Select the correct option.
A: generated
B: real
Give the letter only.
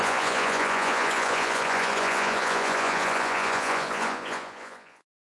A